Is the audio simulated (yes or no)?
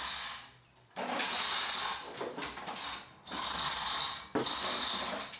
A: no